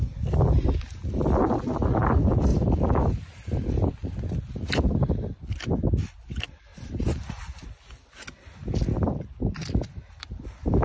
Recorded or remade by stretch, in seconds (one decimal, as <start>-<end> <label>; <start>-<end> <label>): 0.0-2.5 recorded; 2.5-3.2 remade; 3.2-6.7 recorded; 6.7-7.4 remade; 7.4-10.8 recorded